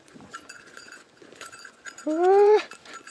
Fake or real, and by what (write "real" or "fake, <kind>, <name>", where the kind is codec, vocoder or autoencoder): fake, vocoder, Vocos